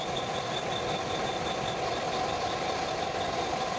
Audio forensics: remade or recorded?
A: recorded